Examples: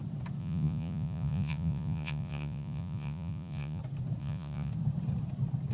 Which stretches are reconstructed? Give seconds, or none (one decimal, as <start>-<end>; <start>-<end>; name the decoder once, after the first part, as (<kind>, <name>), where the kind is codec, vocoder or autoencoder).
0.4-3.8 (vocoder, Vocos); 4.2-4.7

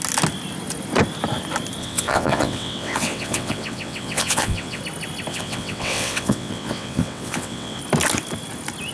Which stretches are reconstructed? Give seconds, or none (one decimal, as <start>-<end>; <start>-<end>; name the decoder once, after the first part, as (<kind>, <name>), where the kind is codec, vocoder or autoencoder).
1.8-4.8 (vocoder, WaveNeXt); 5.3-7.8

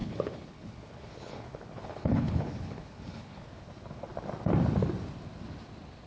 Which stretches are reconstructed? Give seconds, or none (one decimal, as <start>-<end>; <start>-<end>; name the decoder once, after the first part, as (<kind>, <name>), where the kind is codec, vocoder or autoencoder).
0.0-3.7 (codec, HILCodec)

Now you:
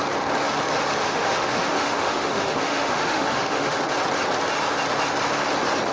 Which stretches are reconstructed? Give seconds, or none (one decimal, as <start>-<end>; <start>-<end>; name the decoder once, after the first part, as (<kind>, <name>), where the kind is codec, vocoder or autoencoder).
1.0-3.8 (autoencoder, DAC-VAE)

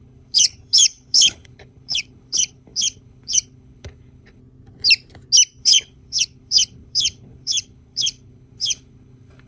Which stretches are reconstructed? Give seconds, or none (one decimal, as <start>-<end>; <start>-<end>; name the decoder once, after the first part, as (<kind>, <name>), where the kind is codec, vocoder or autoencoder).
0.0-4.4 (codec, HILCodec); 5.6-9.5